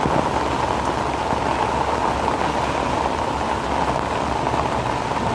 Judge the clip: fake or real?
real